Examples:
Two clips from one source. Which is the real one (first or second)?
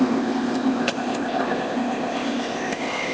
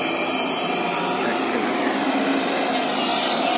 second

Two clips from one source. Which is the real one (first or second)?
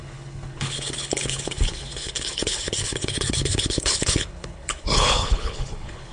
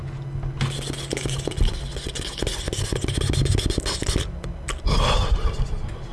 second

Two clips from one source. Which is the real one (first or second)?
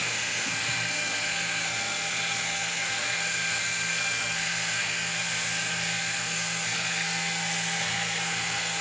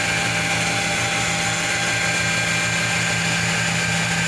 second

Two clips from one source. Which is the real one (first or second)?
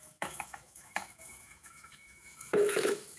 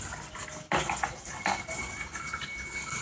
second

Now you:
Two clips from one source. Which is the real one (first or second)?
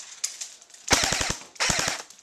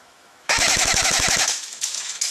first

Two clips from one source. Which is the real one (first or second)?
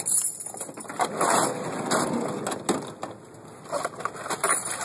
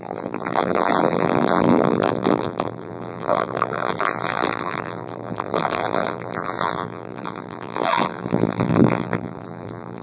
first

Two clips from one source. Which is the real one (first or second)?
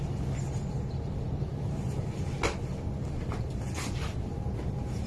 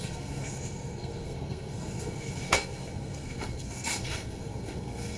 first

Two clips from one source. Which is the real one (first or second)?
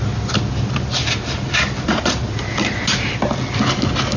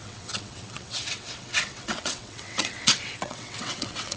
first